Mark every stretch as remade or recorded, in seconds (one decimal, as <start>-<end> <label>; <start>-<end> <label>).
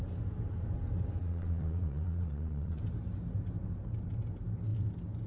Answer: 0.0-1.2 recorded; 1.2-2.8 remade; 2.8-5.3 recorded